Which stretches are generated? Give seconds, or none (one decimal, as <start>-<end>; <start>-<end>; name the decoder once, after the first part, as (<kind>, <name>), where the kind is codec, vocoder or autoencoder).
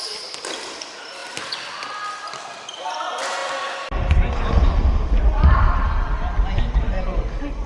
none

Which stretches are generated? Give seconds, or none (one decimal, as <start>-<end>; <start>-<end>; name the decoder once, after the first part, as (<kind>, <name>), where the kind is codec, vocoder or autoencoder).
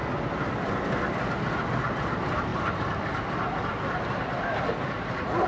none